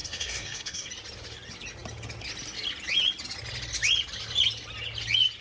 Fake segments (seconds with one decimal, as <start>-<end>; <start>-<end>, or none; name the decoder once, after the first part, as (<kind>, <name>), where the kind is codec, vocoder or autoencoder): 0.0-0.9 (codec, SNAC)